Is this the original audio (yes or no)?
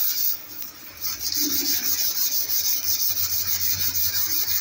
yes